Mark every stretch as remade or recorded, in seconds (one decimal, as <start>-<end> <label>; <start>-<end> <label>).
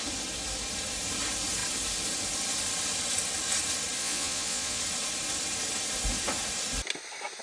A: 0.0-4.0 recorded; 4.0-4.8 remade; 4.8-7.4 recorded